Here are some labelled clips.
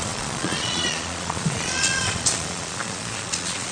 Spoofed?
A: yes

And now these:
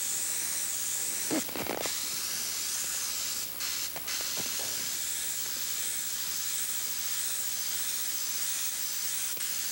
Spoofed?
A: no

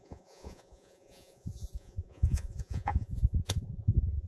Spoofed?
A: yes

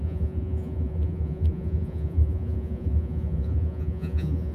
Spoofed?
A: yes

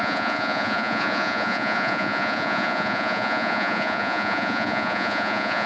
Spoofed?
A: yes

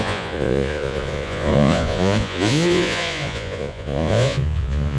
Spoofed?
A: yes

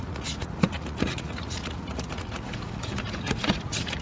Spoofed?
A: yes